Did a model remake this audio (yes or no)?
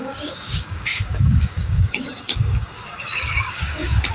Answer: yes